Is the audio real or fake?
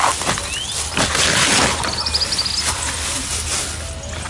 real